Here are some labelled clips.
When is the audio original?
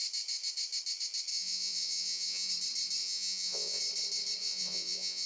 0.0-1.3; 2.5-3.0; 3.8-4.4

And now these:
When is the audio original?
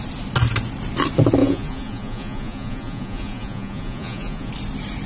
0.0-1.4; 4.5-5.1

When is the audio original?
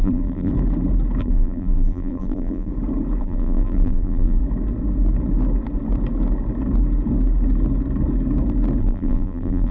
0.5-1.2; 2.7-3.2; 4.4-8.8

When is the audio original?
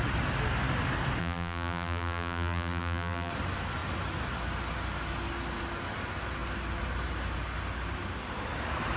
0.0-1.2; 3.3-9.0